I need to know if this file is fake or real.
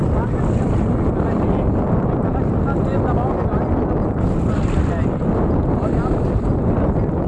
real